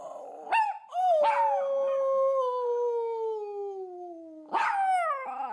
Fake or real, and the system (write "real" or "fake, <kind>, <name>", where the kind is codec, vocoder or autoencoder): real